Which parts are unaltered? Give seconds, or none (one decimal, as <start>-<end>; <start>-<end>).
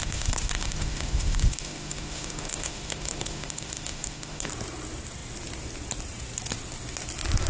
4.5-7.5